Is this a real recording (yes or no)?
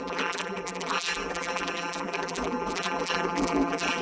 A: no